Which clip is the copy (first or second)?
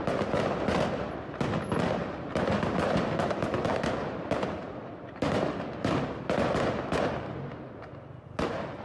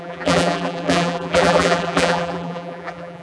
second